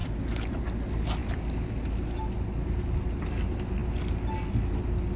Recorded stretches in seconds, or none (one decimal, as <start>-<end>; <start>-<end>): 0.0-5.2